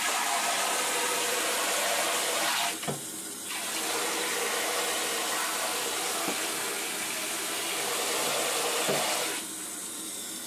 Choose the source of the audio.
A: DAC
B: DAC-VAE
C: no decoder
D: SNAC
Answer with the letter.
C